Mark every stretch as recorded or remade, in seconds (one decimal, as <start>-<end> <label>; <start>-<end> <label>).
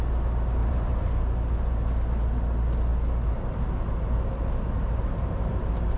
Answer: 0.0-0.6 recorded; 0.6-1.2 remade; 1.2-5.0 recorded; 5.0-5.6 remade; 5.6-6.0 recorded